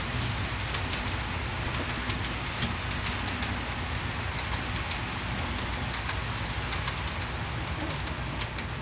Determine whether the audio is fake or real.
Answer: real